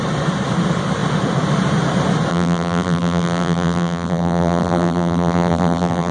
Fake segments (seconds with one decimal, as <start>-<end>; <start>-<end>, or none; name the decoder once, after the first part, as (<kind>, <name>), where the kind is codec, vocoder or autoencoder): 2.3-6.1 (vocoder, BigVGAN v2)